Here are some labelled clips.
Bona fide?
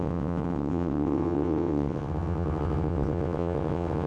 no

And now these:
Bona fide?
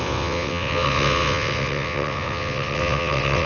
no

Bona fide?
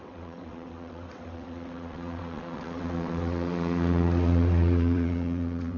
no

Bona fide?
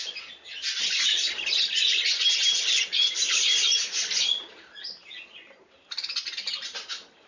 yes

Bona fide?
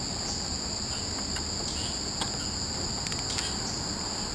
yes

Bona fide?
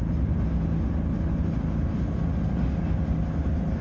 yes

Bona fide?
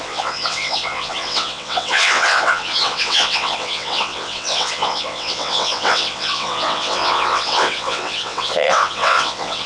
no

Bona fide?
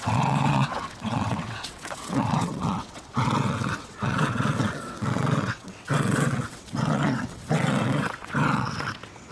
no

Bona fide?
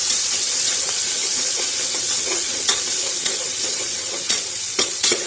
no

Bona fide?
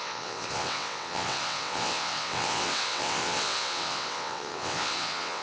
no